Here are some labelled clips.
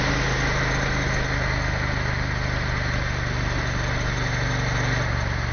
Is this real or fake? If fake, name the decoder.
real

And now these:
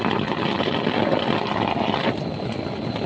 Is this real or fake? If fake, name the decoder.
real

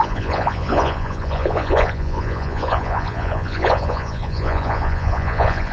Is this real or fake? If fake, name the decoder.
fake, vocoder, Vocos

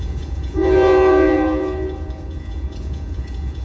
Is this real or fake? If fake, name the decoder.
fake, vocoder, Vocos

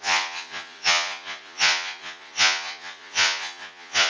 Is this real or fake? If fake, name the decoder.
fake, vocoder, Vocos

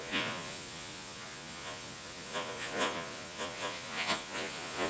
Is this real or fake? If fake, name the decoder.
fake, vocoder, Vocos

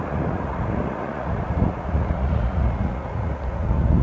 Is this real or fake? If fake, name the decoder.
fake, vocoder, Vocos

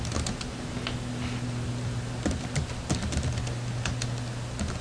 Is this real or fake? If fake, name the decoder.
real